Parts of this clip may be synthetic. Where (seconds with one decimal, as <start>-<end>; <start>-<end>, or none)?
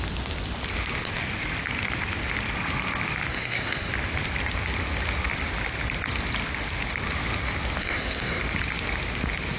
3.3-3.9; 7.8-8.4